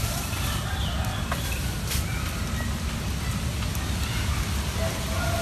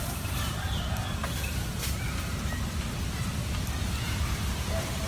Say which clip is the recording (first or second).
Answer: first